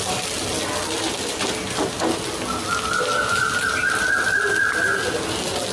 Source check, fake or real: real